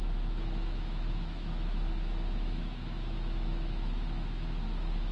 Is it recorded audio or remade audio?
remade